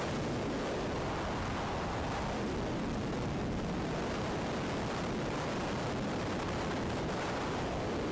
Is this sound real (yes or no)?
yes